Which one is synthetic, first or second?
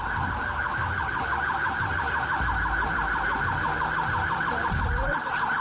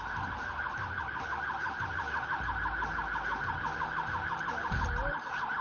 first